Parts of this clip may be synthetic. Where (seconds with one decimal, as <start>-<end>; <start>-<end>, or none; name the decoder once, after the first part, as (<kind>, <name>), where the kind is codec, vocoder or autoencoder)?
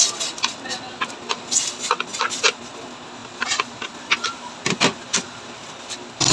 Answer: 3.2-3.9 (vocoder, BigVGAN v2)